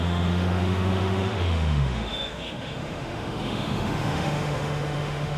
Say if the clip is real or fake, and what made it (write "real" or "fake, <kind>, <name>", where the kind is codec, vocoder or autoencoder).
fake, autoencoder, DAC-VAE